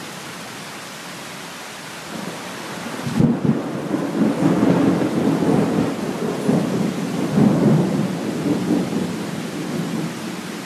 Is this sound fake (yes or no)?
no